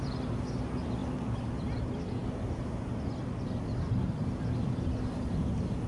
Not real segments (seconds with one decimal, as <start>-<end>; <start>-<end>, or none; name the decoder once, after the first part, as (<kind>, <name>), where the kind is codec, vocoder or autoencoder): none